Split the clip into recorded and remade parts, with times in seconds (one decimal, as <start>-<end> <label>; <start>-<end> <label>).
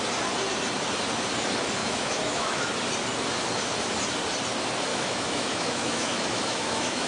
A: 0.0-1.8 recorded; 1.8-2.7 remade; 2.7-4.9 recorded; 4.9-7.1 remade